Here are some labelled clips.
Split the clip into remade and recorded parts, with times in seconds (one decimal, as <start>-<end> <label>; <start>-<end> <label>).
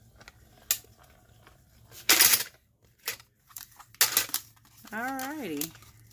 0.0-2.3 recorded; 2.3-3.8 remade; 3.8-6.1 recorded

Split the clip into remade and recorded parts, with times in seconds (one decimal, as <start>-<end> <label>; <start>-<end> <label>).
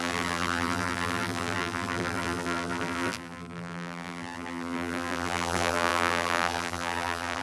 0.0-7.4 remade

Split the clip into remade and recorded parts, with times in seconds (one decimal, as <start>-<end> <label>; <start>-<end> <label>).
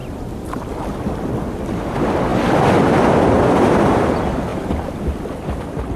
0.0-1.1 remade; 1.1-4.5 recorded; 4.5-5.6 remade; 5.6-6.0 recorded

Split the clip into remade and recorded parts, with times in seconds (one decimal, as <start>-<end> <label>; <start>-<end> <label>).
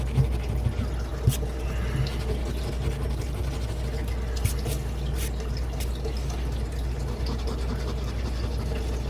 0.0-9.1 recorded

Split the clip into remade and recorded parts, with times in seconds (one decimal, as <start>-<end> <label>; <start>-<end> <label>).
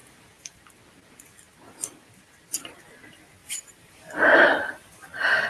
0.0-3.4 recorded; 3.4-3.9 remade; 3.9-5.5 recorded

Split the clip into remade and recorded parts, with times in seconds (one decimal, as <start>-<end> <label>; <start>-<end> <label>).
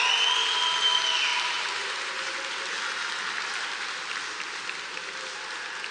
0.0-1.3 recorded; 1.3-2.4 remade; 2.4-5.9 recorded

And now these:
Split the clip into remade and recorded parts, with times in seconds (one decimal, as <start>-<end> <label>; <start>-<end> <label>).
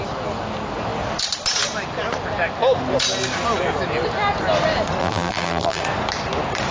0.0-5.0 recorded; 5.0-5.8 remade; 5.8-6.7 recorded